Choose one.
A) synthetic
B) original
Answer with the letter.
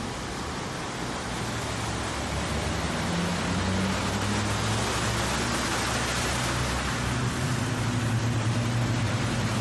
B